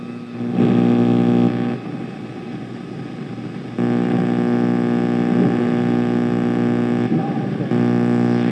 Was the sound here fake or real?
real